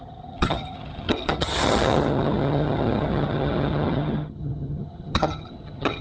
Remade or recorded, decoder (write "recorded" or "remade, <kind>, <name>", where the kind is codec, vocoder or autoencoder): remade, vocoder, HiFi-GAN